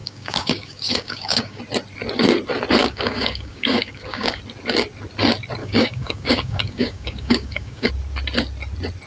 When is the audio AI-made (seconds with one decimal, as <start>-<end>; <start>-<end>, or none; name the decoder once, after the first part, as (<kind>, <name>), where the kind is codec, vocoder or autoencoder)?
0.0-1.6 (codec, DAC); 2.8-4.4; 5.6-7.9